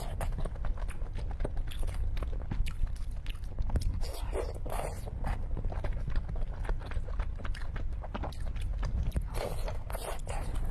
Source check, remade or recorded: recorded